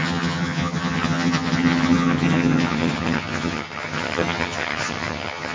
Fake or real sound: fake